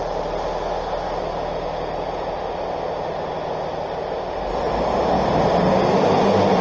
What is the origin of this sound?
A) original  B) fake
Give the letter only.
A